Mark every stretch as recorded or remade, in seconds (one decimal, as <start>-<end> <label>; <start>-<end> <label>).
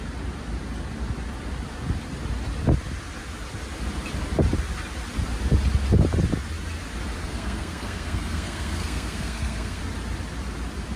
0.0-7.2 recorded; 7.2-9.8 remade; 9.8-11.0 recorded